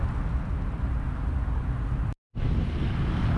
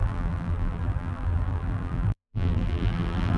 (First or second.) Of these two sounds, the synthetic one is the second